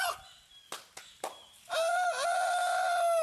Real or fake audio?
real